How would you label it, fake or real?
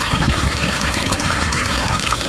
fake